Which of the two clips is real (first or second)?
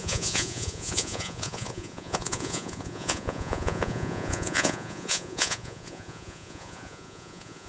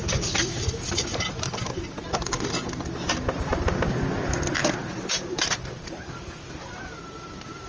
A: second